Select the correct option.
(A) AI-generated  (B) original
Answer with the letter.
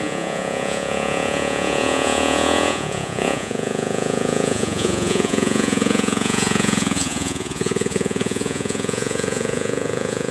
A